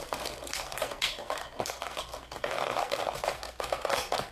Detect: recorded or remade remade